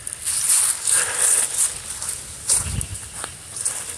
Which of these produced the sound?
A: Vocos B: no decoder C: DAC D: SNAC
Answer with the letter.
B